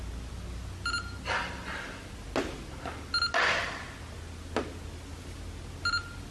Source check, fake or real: real